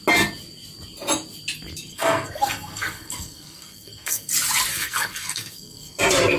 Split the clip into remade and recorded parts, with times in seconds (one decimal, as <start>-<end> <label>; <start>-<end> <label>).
0.0-1.9 recorded; 1.9-4.3 remade; 4.3-4.7 recorded; 4.7-6.0 remade; 6.0-6.4 recorded